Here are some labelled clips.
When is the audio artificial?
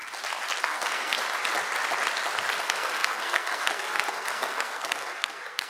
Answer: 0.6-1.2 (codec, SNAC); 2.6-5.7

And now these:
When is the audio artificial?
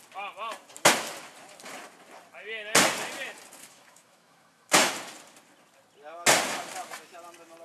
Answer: 3.6-4.9 (autoencoder, DAC-VAE)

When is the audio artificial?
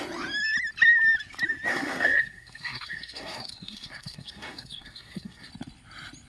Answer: 1.7-5.5 (codec, SNAC)